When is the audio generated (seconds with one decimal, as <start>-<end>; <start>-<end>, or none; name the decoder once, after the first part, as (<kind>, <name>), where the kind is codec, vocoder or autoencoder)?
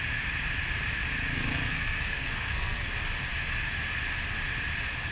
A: 1.3-2.9 (codec, SNAC)